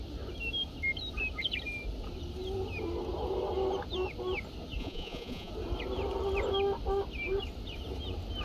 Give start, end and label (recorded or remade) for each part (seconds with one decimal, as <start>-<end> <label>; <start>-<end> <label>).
0.0-4.8 recorded; 4.8-5.5 remade; 5.5-8.4 recorded